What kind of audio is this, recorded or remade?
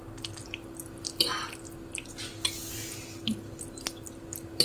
recorded